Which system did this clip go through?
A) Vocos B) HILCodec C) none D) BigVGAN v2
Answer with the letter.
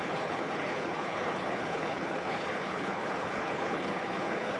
B